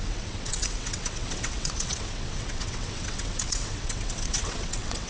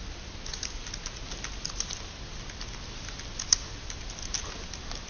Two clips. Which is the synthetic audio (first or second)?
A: first